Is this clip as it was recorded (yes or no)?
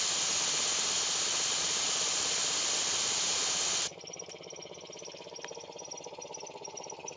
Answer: yes